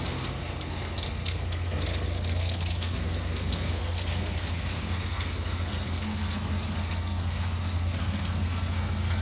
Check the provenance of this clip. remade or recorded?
remade